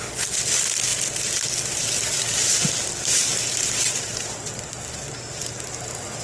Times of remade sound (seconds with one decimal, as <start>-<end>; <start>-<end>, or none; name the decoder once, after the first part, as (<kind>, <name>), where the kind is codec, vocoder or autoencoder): none